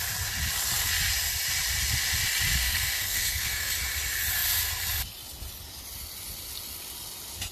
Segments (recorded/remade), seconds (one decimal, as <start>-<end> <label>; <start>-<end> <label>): 0.0-2.6 recorded; 2.6-3.7 remade; 3.7-7.5 recorded